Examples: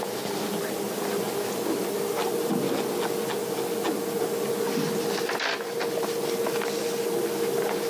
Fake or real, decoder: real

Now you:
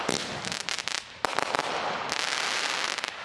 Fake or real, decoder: real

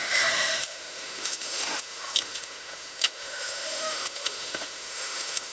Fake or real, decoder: fake, autoencoder, DAC-VAE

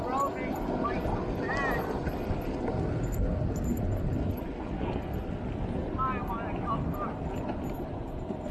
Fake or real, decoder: real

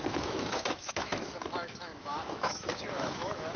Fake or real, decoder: fake, autoencoder, DAC-VAE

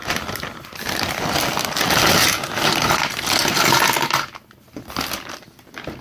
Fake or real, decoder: real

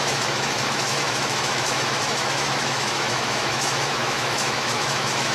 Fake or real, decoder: fake, autoencoder, DAC-VAE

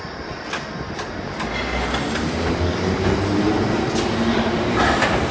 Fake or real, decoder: real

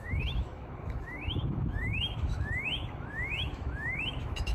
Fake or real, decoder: fake, autoencoder, DAC-VAE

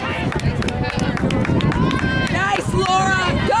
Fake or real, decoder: real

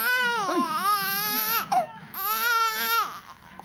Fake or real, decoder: fake, autoencoder, DAC-VAE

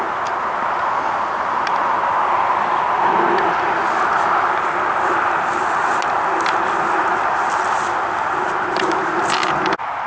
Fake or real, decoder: real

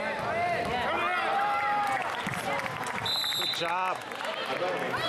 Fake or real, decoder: real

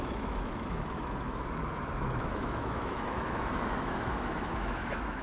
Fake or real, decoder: fake, autoencoder, DAC-VAE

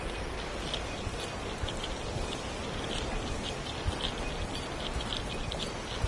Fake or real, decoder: real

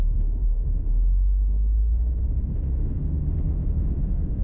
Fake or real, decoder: fake, autoencoder, DAC-VAE